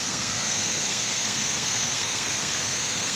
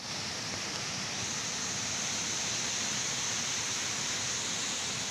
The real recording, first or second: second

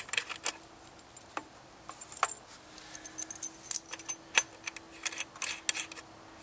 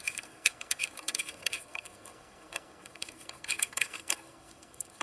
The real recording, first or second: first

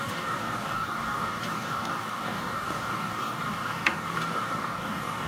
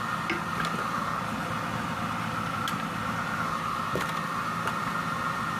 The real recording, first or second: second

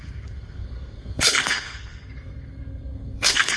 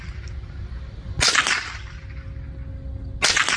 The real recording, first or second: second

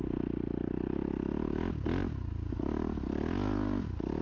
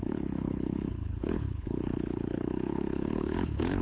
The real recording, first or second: first